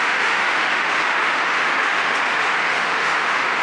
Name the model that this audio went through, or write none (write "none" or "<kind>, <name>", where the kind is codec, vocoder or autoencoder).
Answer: autoencoder, DAC-VAE